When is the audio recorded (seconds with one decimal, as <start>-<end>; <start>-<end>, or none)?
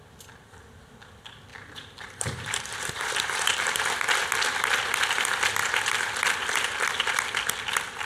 0.0-1.5; 3.8-8.0